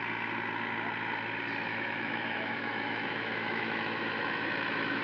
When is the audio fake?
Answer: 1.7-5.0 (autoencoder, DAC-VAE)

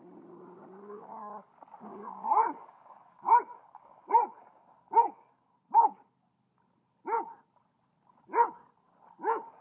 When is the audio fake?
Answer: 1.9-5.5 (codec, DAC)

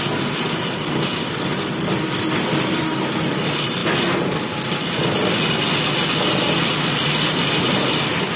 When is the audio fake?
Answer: none

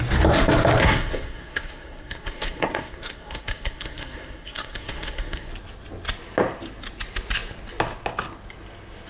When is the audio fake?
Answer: 0.8-5.5 (codec, SNAC)

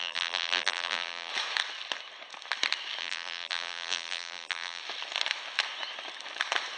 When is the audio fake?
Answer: 0.0-1.3 (vocoder, BigVGAN v2); 3.0-4.8

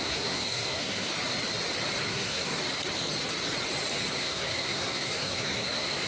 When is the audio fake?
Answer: 0.0-1.1 (codec, SNAC); 2.0-2.6; 4.1-6.1